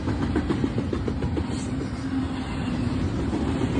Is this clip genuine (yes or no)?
yes